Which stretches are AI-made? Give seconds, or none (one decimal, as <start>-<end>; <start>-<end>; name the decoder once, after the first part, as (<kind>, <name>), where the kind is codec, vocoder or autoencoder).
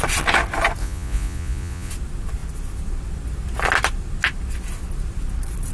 0.8-1.9 (vocoder, Vocos)